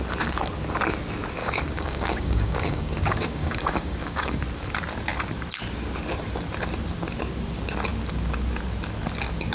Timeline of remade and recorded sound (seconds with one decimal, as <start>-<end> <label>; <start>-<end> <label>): 0.0-1.4 recorded; 1.4-4.4 remade; 4.4-9.5 recorded